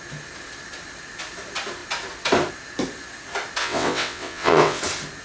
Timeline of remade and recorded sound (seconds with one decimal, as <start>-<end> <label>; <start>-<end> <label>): 0.0-3.6 recorded; 3.6-4.8 remade; 4.8-5.2 recorded